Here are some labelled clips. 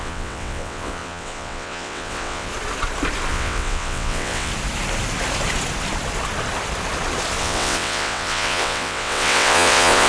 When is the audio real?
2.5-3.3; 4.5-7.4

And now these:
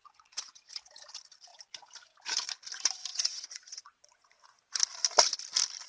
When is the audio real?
0.6-3.1; 4.4-5.9

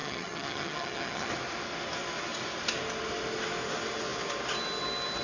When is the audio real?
1.3-5.2

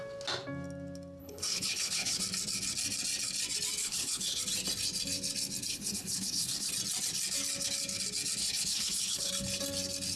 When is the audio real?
0.0-1.2; 2.2-3.8; 4.4-5.7; 6.7-8.4; 9.3-10.2

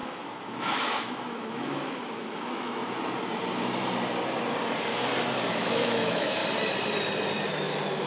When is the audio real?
2.8-5.5; 6.4-7.5

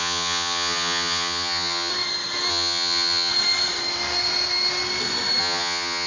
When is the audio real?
1.9-2.5; 3.3-5.4